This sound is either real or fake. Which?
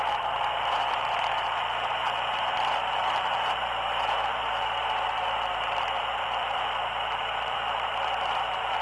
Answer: fake